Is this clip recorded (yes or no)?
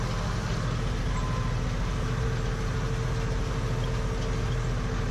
yes